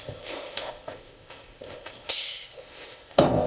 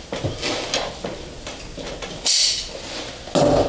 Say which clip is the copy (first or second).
first